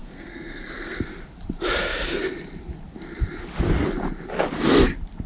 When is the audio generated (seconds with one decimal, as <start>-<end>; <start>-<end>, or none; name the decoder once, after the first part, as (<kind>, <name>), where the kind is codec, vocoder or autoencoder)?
0.0-1.0 (codec, SNAC)